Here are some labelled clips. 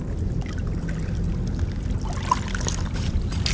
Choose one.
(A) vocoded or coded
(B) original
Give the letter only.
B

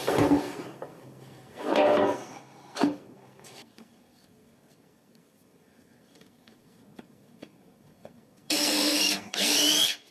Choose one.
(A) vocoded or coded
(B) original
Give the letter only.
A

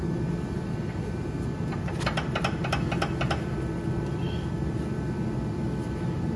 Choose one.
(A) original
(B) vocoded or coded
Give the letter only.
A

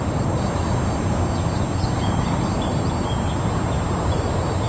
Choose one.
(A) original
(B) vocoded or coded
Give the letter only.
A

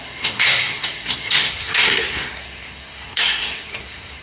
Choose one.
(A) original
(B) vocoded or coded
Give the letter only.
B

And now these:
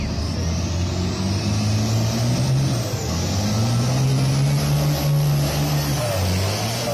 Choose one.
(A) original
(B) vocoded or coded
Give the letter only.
A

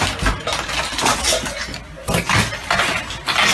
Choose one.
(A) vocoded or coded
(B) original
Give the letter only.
B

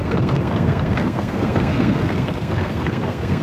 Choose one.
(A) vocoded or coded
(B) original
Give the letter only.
A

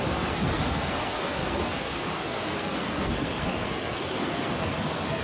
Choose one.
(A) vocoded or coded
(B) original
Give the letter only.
A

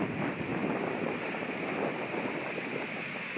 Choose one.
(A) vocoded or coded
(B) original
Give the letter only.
B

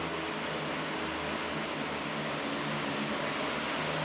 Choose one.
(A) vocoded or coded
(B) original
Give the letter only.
B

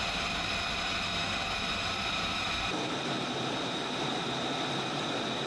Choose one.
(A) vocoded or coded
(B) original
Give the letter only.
B